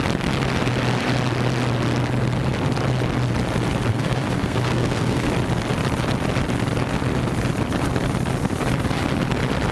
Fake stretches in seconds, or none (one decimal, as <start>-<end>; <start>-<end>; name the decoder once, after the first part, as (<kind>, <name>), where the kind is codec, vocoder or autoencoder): 3.9-5.3 (codec, SNAC)